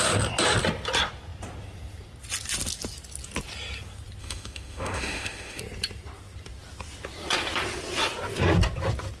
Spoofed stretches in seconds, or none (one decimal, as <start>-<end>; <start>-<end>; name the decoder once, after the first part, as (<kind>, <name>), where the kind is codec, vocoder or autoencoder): 4.2-5.6 (autoencoder, DAC-VAE)